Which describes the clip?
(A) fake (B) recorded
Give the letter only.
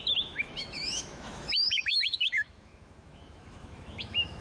A